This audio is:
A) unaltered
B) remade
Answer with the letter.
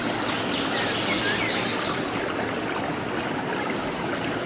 A